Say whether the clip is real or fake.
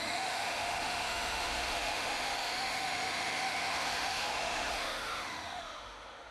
fake